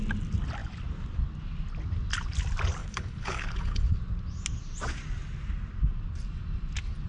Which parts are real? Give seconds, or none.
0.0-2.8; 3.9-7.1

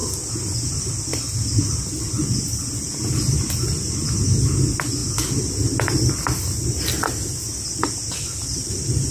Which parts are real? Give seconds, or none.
0.0-9.1